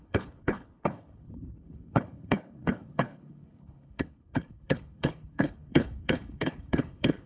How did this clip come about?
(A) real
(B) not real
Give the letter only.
B